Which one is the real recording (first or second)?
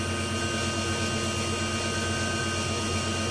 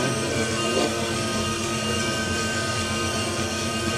first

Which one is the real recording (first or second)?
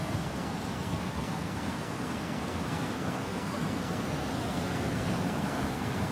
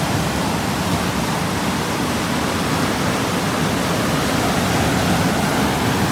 second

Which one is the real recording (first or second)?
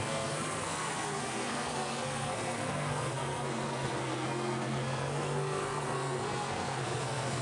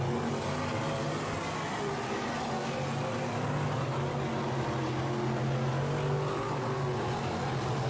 second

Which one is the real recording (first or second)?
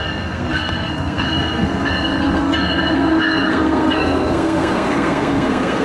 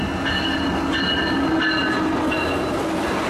second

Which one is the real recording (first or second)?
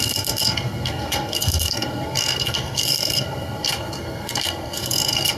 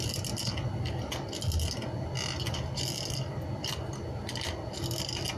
second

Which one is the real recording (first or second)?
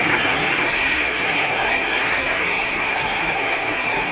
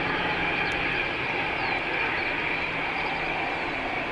second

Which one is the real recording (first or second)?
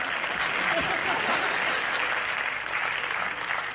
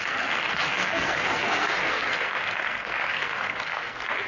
first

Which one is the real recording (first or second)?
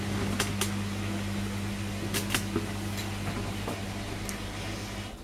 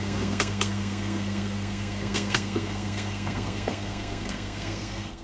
first